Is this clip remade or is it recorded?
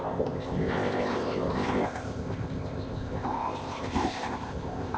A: remade